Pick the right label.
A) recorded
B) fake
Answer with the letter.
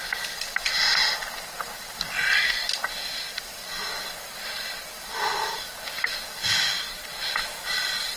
A